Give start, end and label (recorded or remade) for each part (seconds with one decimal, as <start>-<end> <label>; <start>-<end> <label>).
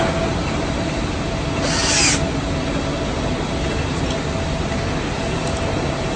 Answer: 0.0-6.2 recorded